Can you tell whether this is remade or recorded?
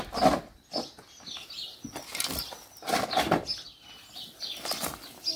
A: recorded